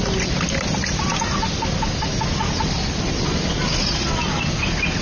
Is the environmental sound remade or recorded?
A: recorded